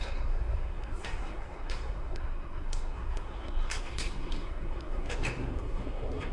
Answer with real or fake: fake